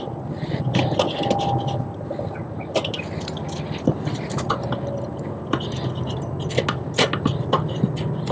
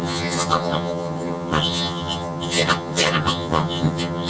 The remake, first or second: second